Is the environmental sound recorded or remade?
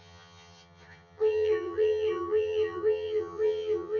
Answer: remade